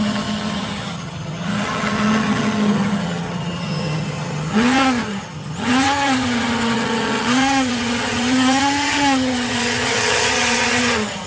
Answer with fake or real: fake